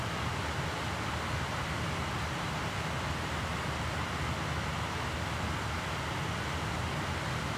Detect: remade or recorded recorded